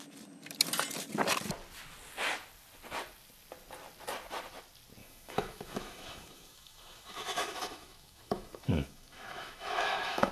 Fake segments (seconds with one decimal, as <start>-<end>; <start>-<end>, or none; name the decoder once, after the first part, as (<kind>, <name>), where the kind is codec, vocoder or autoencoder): 5.0-10.3 (autoencoder, DAC-VAE)